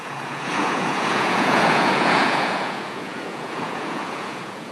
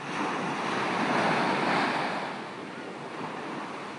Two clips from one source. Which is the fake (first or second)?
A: first